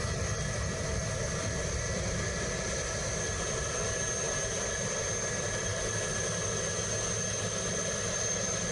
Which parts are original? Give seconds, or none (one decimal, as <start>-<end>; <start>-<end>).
0.0-8.7